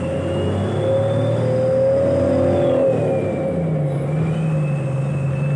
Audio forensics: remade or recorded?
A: recorded